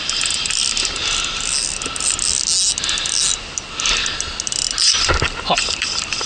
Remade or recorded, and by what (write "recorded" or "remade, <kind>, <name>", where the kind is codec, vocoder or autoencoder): recorded